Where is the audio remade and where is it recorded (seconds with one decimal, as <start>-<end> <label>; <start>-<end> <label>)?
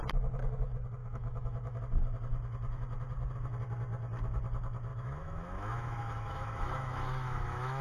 0.0-1.0 recorded; 1.0-1.8 remade; 1.8-4.9 recorded; 4.9-7.8 remade